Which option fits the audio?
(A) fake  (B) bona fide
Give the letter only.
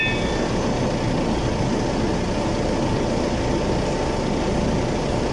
B